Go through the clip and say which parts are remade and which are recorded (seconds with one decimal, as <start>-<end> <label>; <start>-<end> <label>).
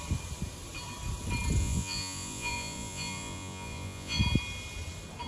0.0-1.6 recorded; 1.6-4.2 remade; 4.2-5.3 recorded